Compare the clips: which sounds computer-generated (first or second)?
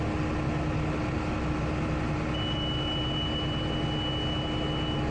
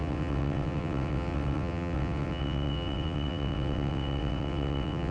second